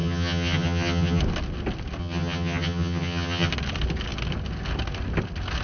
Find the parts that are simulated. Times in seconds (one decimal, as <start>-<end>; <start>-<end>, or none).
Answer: 0.0-1.2; 2.0-3.5